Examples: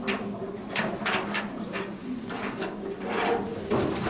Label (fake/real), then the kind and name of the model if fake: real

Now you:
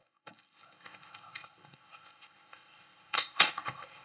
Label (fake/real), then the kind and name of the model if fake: fake, codec, ZipCodec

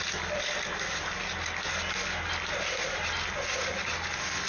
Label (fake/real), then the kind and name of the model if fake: real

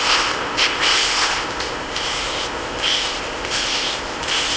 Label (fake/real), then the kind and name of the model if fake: fake, codec, ZipCodec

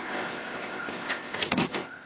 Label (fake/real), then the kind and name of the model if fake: fake, codec, ZipCodec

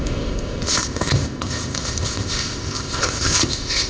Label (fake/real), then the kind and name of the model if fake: fake, codec, ZipCodec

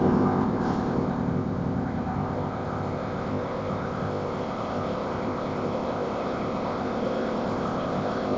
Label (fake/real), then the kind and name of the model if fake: fake, codec, ZipCodec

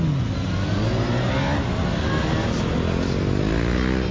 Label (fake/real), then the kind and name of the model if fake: real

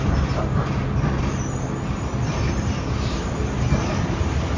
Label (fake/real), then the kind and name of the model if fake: real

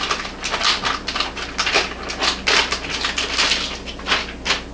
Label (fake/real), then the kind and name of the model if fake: real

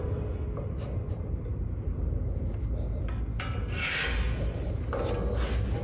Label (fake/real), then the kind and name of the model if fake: real